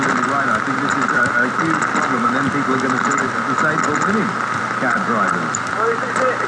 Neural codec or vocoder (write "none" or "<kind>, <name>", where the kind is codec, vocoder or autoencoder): none